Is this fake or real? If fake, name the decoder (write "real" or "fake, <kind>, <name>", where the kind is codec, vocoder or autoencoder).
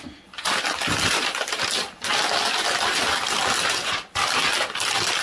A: real